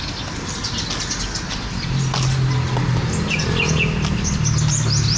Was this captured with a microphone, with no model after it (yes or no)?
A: yes